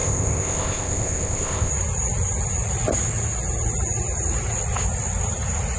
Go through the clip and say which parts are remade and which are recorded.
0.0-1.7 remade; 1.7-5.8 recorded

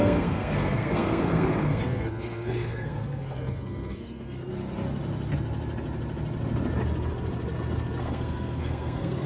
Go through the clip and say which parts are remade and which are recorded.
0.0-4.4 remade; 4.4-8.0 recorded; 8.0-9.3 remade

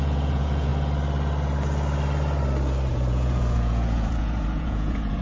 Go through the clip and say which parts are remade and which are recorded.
0.0-0.7 remade; 0.7-2.9 recorded; 2.9-5.2 remade

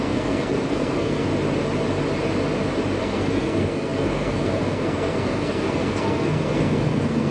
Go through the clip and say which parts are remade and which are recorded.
0.0-1.3 remade; 1.3-3.0 recorded; 3.0-7.3 remade

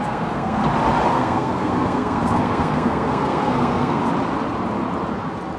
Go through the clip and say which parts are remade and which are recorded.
0.0-0.6 remade; 0.6-1.1 recorded; 1.1-4.0 remade; 4.0-5.6 recorded

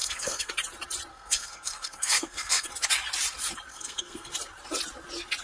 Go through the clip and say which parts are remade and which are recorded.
0.0-0.5 remade; 0.5-1.1 recorded; 1.1-2.7 remade; 2.7-3.7 recorded; 3.7-4.3 remade; 4.3-5.4 recorded